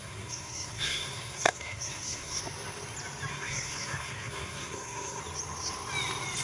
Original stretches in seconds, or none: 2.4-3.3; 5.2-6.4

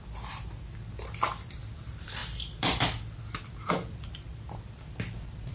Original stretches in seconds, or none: 0.0-5.5

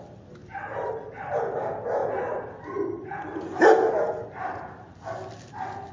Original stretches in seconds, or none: 0.0-5.9